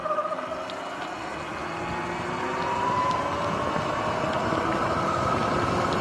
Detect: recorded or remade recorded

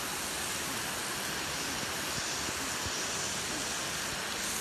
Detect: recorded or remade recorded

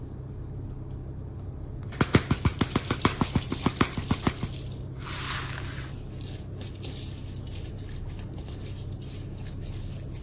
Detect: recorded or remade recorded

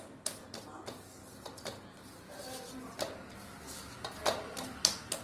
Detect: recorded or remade recorded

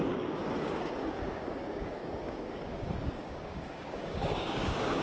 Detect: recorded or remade remade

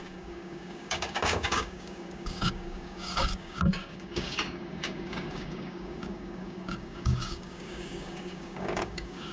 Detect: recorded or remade remade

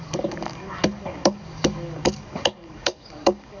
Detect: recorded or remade remade